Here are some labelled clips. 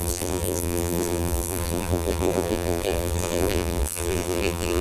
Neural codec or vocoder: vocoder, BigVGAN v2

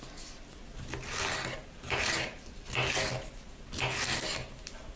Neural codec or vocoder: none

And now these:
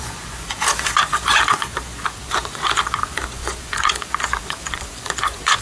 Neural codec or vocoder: vocoder, Vocos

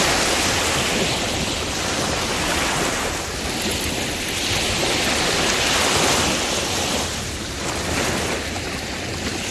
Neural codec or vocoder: none